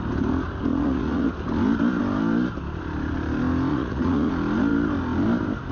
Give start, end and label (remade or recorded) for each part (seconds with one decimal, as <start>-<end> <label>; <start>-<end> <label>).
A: 0.0-0.7 recorded; 0.7-1.3 remade; 1.3-3.7 recorded; 3.7-4.3 remade; 4.3-5.7 recorded